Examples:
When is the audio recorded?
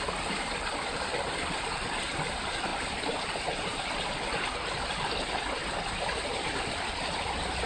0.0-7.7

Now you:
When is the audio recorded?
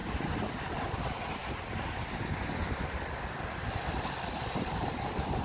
0.0-0.6; 1.4-4.6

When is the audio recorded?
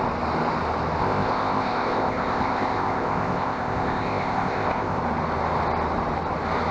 0.0-1.0; 5.0-6.7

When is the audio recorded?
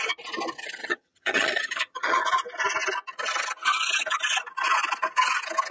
0.0-0.8; 2.2-5.7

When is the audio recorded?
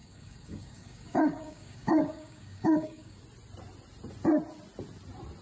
3.2-5.4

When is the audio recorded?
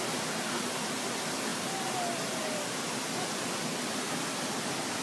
0.0-5.0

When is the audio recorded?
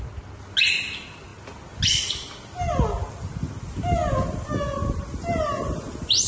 0.0-6.3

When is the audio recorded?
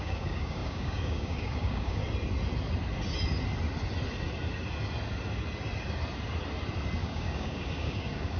2.0-7.0